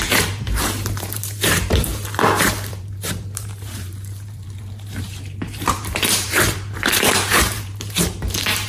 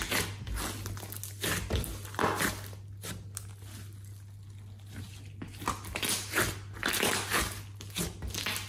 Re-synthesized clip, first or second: first